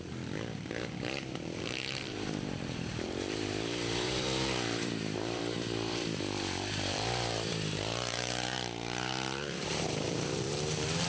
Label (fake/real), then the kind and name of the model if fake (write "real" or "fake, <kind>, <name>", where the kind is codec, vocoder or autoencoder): fake, vocoder, BigVGAN v2